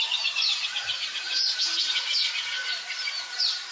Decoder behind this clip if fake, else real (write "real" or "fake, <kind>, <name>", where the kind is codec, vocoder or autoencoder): fake, vocoder, BigVGAN v2